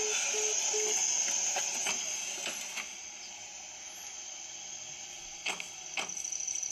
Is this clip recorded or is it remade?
recorded